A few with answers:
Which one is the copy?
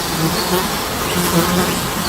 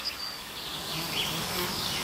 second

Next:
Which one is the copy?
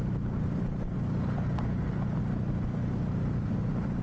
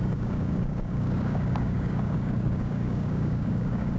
second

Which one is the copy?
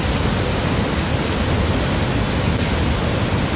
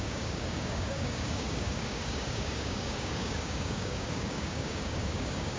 second